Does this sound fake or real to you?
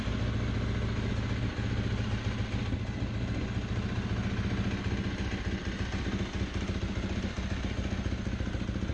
real